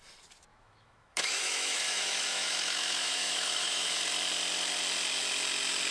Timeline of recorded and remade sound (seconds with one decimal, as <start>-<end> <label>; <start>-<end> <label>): 0.0-0.5 recorded; 0.5-4.0 remade; 4.0-5.9 recorded